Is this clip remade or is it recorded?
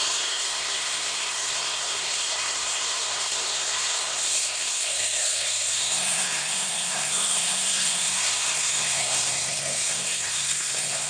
remade